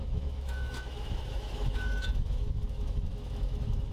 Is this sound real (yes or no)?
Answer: no